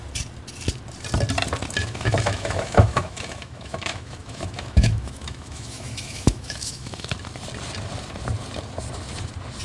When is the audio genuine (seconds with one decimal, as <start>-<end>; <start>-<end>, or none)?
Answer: 0.0-1.8; 7.1-9.6